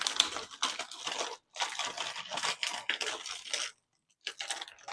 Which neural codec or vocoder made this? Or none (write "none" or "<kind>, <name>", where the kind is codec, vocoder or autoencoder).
none